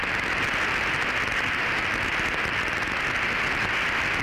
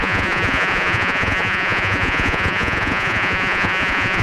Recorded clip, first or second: first